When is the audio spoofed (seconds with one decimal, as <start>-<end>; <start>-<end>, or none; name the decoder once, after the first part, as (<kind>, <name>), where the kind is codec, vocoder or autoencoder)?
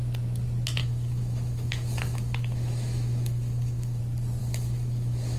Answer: 0.8-4.0 (autoencoder, DAC-VAE); 4.4-5.4